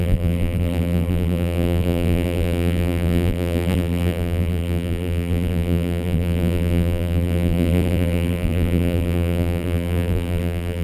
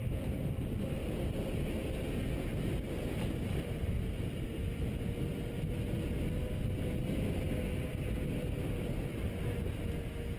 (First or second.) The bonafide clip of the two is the second